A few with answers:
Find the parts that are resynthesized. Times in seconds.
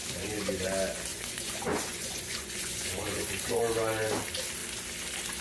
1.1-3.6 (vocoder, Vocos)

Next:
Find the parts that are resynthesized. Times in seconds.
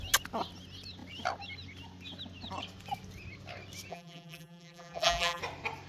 3.9-5.4 (vocoder, BigVGAN v2)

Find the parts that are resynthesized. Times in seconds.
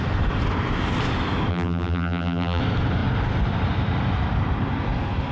1.5-2.6 (vocoder, BigVGAN v2)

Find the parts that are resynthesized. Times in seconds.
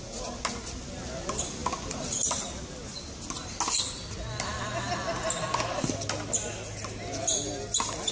none